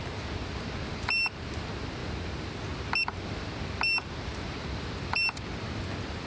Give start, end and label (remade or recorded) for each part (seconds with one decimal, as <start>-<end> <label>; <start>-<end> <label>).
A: 0.0-6.3 recorded